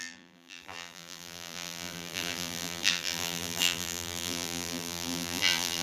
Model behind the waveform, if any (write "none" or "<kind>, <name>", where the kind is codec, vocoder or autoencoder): vocoder, BigVGAN v2